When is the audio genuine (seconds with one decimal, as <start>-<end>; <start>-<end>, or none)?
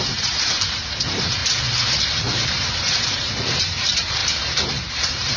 1.4-2.2; 4.2-4.9